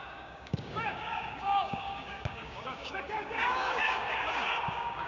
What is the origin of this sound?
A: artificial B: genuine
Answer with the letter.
A